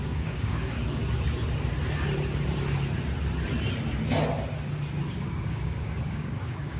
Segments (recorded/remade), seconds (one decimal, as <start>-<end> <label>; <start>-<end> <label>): 0.0-1.0 remade; 1.0-5.1 recorded; 5.1-6.8 remade